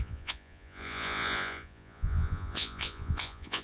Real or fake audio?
fake